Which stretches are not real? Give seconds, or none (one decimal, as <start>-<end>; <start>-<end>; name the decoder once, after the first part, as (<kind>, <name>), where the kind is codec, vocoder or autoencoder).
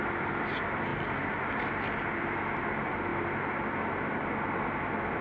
none